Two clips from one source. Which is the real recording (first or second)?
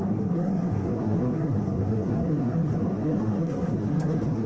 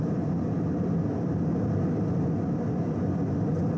second